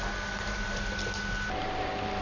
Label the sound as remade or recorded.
recorded